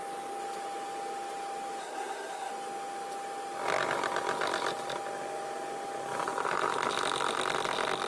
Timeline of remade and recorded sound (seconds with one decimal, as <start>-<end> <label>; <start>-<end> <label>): 0.0-1.8 recorded; 1.8-2.5 remade; 2.5-8.1 recorded